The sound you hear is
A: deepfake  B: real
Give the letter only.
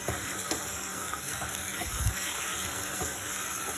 A